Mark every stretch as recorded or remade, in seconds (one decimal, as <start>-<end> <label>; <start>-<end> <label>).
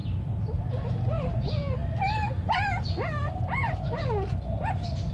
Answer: 0.0-5.1 recorded